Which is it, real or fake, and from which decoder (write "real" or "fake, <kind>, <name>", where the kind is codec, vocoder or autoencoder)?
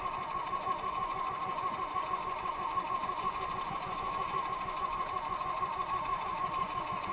fake, vocoder, Vocos